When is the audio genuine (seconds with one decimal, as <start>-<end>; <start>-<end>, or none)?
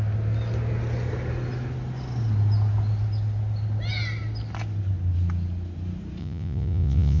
0.0-6.2